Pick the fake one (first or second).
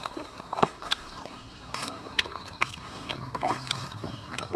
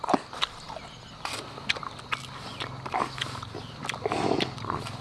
first